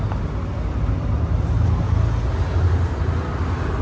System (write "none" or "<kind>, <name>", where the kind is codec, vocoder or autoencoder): none